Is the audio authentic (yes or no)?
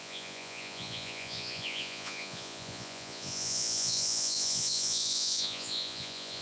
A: no